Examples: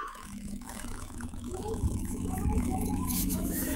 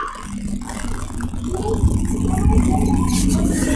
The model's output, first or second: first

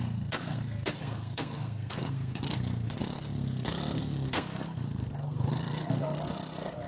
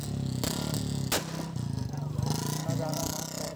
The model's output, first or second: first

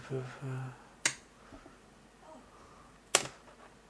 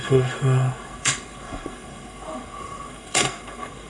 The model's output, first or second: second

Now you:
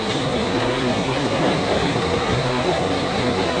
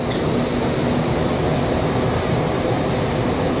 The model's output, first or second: first